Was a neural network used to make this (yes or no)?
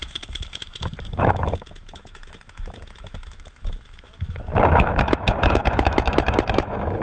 yes